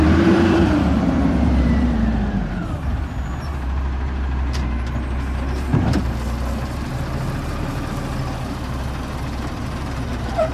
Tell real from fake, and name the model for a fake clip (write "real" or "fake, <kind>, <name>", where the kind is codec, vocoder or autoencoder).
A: fake, vocoder, BigVGAN v2